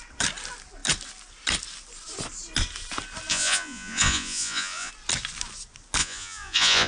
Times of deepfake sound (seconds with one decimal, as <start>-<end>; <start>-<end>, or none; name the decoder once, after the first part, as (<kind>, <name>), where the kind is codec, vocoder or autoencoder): 3.3-4.9 (vocoder, Vocos); 6.0-6.9